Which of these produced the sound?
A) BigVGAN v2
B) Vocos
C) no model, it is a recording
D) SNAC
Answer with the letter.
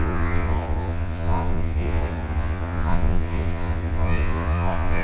B